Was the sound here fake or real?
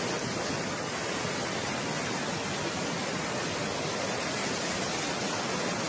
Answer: real